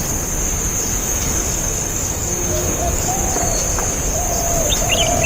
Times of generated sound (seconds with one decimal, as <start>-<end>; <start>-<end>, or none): 1.0-3.1